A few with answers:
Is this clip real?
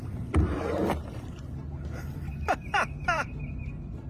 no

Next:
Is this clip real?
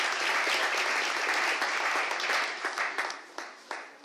yes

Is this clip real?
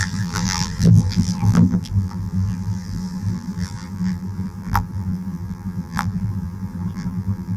no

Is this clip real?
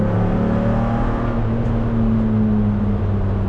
yes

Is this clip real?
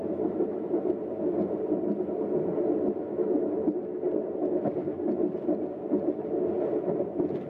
yes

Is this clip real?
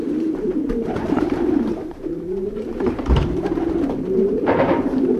no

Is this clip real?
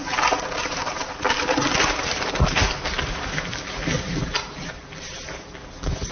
no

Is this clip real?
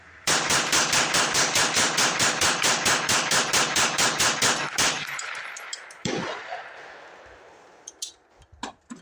no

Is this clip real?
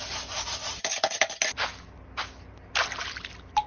yes